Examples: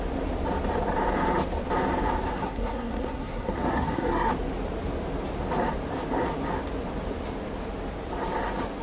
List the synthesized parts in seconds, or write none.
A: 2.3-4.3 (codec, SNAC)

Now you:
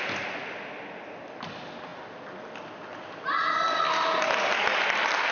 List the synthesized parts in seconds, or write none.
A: none